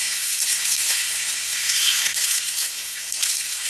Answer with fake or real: fake